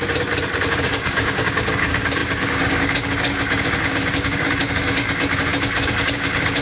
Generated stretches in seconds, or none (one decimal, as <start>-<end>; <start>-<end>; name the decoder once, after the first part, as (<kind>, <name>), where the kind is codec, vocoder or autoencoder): 0.7-6.6 (codec, DAC)